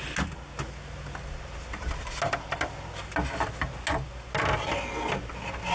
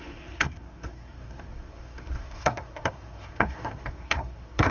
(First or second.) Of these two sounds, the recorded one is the first